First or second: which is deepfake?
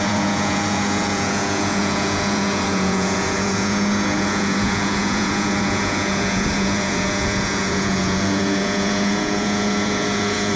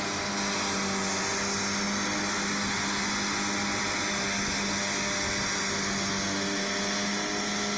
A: first